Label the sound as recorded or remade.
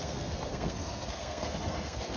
remade